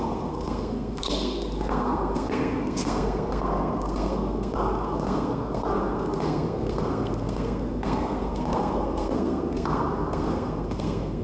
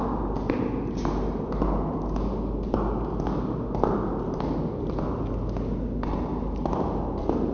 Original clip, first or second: second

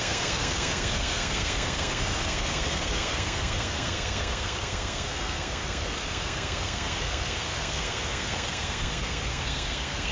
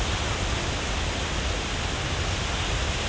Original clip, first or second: second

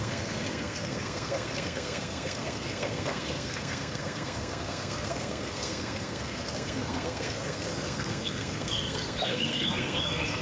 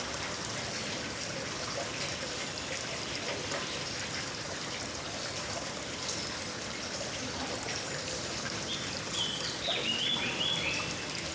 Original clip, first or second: second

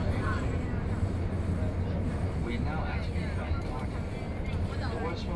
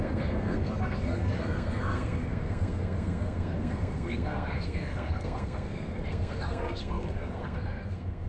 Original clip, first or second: first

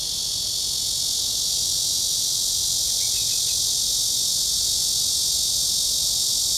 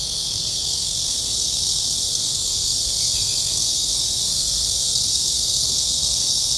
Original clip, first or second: first